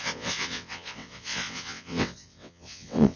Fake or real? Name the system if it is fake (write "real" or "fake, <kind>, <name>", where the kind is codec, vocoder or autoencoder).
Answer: fake, vocoder, WaveNeXt